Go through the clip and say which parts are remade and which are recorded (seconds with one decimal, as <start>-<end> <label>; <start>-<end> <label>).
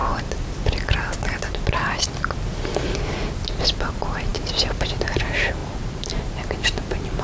0.0-3.6 recorded; 3.6-7.2 remade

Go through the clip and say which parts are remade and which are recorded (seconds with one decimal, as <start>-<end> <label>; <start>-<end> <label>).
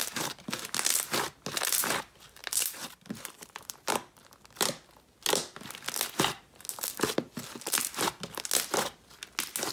0.0-2.4 recorded; 2.4-3.9 remade; 3.9-9.7 recorded